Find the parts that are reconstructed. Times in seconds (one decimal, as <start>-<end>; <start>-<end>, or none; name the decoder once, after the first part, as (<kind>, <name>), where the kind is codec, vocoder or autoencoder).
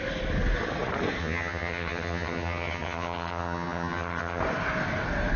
1.2-4.4 (vocoder, HiFi-GAN)